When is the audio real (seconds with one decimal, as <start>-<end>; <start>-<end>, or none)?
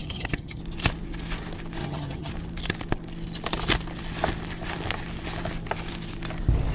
0.6-1.8; 2.3-6.7